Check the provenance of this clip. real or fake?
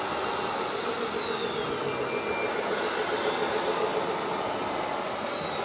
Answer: real